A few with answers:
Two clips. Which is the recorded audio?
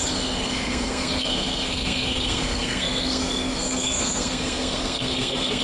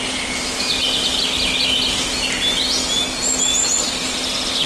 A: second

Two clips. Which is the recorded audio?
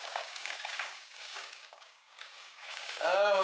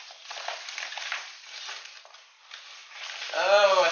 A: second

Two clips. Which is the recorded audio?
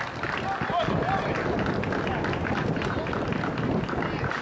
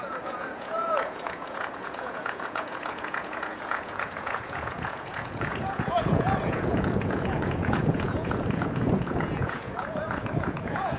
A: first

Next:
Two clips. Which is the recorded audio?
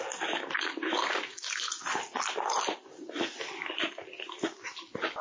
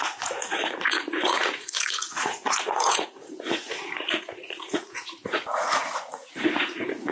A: first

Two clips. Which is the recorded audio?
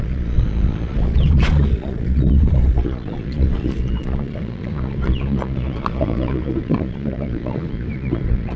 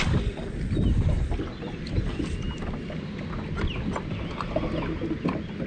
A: second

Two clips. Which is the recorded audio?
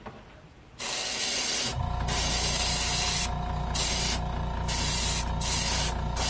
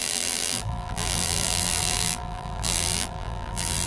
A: first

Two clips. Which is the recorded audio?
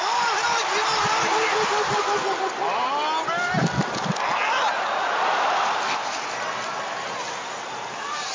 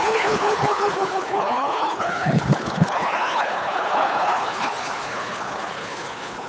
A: first